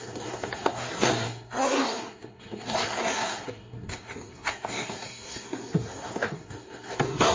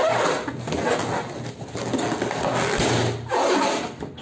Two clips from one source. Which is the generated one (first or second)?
first